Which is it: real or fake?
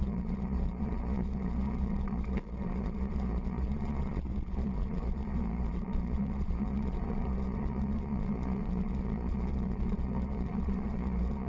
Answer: fake